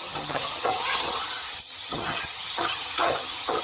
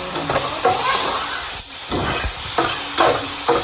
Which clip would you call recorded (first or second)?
second